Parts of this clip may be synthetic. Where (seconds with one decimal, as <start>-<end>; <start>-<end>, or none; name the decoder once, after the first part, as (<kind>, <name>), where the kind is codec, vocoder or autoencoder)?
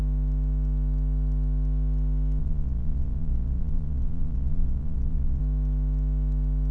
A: 2.4-5.4 (vocoder, Vocos)